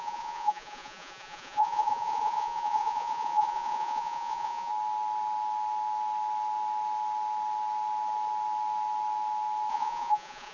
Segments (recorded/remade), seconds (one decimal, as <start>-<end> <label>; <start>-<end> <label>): 0.0-4.7 remade; 4.7-9.7 recorded; 9.7-10.5 remade